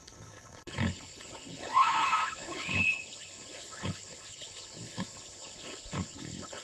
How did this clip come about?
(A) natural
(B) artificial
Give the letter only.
B